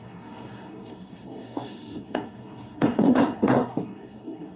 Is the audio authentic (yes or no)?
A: no